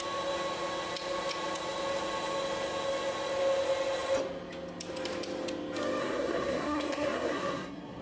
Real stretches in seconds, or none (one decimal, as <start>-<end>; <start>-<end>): 0.0-6.0